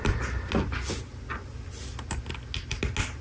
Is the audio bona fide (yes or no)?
yes